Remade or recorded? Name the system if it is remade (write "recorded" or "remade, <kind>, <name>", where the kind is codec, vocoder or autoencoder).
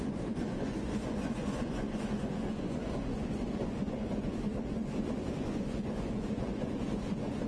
remade, vocoder, Vocos